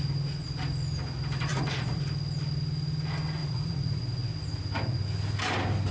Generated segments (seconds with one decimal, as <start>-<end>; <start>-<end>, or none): 1.5-2.0; 3.4-4.0